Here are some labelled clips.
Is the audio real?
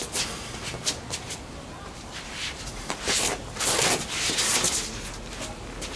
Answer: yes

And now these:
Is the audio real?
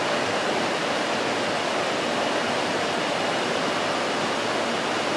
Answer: yes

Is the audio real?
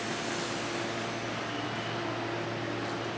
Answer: yes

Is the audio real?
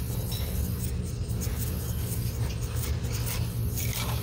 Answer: yes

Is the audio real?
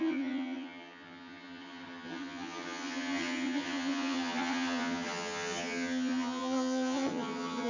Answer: no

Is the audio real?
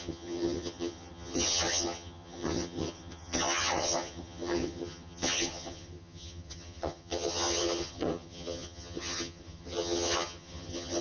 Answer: no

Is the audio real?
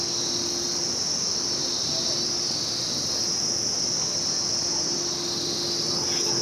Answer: yes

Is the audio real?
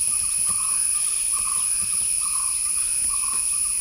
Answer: yes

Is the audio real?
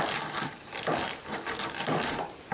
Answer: no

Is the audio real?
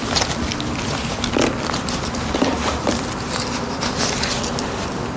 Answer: yes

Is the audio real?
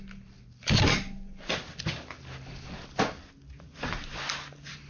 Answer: yes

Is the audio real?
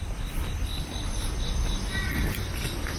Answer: yes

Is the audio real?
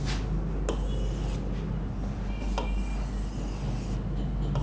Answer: yes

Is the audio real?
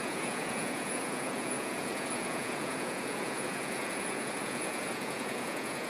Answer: no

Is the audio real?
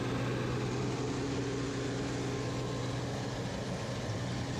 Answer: yes